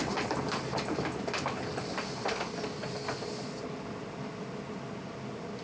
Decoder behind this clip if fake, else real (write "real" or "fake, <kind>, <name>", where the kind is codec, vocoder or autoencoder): real